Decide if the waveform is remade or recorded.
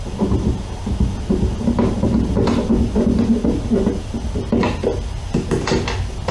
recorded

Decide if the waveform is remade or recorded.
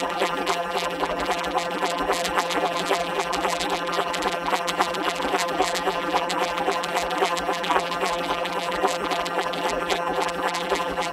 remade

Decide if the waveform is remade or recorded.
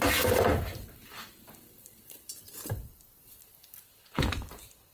remade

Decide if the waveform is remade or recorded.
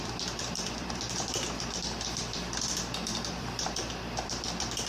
remade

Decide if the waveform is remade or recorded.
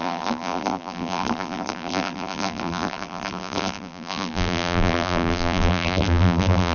remade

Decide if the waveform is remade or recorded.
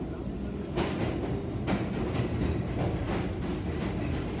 recorded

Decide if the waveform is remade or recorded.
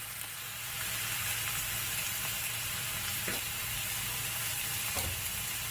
remade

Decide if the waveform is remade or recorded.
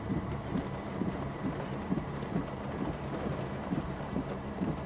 remade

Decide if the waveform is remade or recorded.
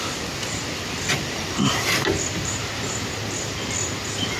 recorded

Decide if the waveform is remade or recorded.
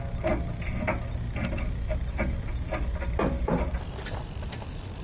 recorded